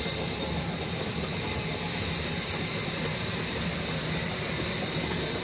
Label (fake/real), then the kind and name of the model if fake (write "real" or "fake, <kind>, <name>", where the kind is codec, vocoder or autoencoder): real